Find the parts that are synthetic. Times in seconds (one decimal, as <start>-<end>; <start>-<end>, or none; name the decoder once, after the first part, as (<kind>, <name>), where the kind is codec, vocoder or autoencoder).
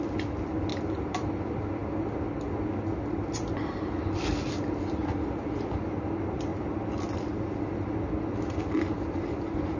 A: 0.7-1.4 (vocoder, BigVGAN v2)